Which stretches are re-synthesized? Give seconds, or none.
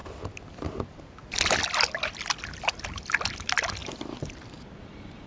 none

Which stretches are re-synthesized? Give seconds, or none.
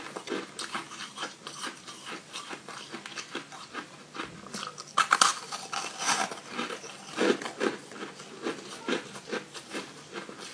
1.0-2.2 (vocoder, BigVGAN v2)